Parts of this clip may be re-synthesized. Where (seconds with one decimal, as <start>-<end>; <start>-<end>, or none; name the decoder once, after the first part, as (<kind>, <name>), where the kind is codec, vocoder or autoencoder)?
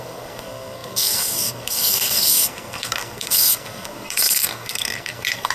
0.0-5.5 (codec, SNAC)